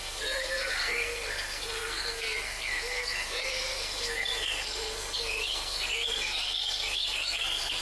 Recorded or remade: remade